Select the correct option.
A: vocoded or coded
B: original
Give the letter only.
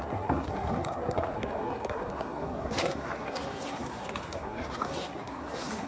A